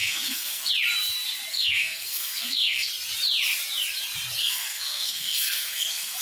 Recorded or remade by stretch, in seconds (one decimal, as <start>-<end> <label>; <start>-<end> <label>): 0.0-0.7 remade; 0.7-1.5 recorded; 1.5-2.9 remade; 2.9-4.4 recorded; 4.4-6.2 remade